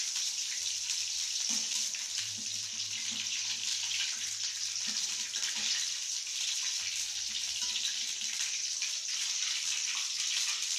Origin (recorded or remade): remade